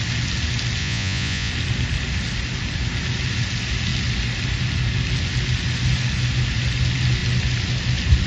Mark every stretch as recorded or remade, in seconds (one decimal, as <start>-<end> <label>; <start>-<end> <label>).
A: 0.0-0.8 recorded; 0.8-1.5 remade; 1.5-8.3 recorded